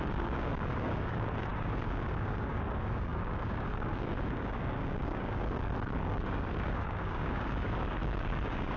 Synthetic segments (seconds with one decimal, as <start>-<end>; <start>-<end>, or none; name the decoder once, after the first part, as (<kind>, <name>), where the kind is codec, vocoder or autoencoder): 0.0-8.8 (codec, DAC)